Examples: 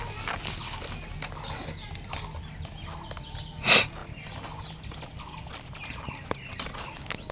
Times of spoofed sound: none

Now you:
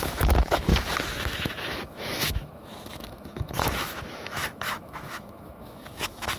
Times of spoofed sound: 0.0-0.7; 1.2-6.4

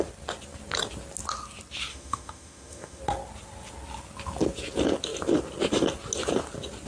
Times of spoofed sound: 1.9-3.0